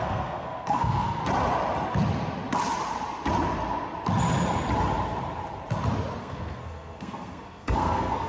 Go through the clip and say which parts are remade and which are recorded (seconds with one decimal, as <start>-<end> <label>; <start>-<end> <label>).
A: 0.0-1.2 remade; 1.2-6.2 recorded; 6.2-8.3 remade